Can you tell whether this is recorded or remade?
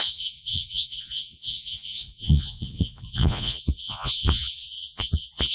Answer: remade